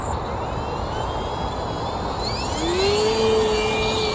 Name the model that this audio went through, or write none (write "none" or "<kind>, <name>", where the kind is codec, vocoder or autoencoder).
none